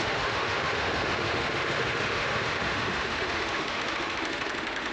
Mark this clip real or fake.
fake